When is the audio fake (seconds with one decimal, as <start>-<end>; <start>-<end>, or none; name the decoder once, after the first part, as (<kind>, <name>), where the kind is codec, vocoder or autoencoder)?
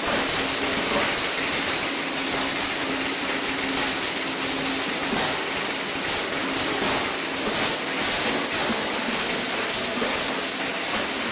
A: none